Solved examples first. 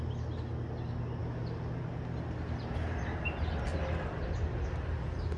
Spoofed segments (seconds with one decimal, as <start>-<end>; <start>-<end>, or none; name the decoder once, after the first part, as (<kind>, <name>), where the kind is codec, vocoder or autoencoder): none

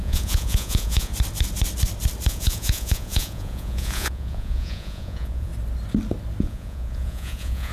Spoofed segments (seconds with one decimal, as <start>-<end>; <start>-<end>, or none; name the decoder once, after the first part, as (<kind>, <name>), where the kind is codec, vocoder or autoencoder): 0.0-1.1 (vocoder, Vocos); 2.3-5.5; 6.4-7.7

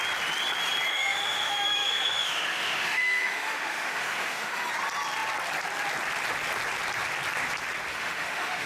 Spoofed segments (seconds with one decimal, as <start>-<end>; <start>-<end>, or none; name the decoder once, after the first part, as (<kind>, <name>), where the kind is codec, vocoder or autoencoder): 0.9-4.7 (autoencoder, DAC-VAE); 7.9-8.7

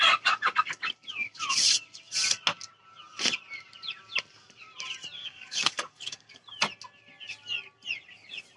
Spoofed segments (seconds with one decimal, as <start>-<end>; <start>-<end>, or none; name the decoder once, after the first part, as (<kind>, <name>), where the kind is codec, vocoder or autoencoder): 5.2-6.3 (codec, DAC)

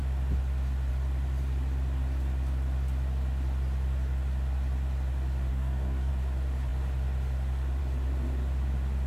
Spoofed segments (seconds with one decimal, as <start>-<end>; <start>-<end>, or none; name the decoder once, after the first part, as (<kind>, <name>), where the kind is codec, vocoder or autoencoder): 5.5-6.1 (codec, DAC)